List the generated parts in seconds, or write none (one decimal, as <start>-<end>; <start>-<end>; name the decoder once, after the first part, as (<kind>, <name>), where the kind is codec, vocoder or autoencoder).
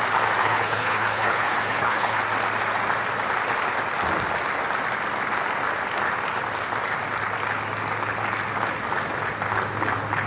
0.4-2.2 (codec, HILCodec)